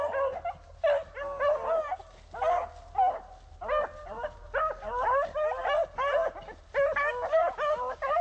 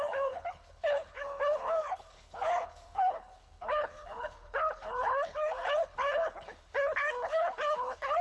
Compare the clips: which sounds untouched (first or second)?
first